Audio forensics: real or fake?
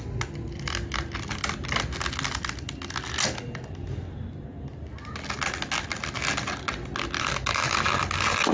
real